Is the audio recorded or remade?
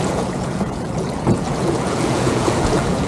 remade